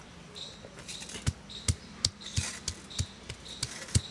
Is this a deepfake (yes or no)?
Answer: no